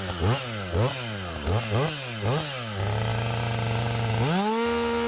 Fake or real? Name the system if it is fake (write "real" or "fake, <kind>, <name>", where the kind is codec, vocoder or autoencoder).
real